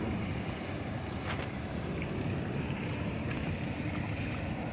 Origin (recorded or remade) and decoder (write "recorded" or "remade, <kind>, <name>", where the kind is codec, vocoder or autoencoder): recorded